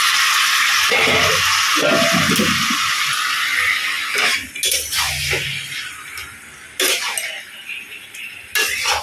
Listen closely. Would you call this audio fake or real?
real